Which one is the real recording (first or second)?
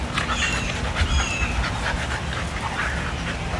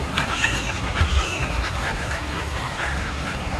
first